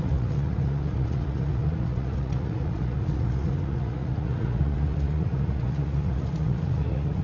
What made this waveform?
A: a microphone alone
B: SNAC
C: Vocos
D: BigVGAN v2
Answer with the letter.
C